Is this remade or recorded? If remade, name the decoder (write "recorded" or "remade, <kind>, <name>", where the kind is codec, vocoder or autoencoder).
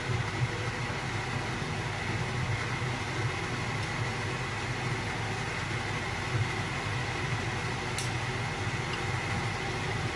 recorded